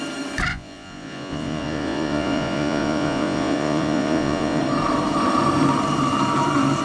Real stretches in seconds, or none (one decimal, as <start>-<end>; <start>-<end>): 0.0-0.5; 4.6-6.8